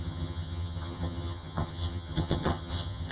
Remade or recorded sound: remade